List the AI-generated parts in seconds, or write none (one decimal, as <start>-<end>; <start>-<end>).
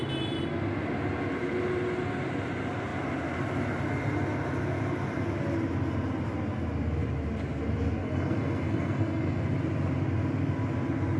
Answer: 8.0-9.4